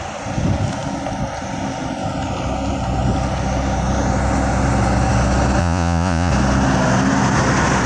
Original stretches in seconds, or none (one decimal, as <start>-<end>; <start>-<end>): 0.0-5.6; 6.3-7.9